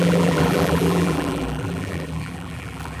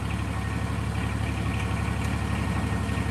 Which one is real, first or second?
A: second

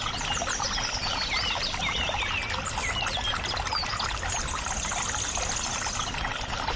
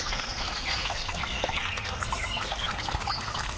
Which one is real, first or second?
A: first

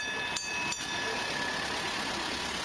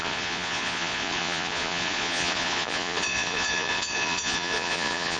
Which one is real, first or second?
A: first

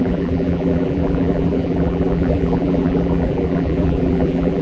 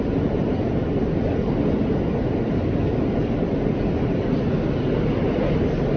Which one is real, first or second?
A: second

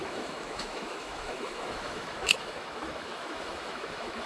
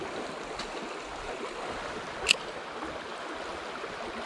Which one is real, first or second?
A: second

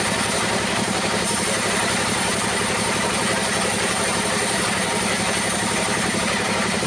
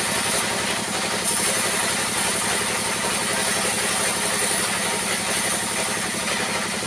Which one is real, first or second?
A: second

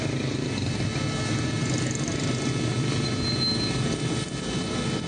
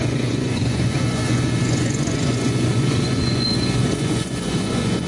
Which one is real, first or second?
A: first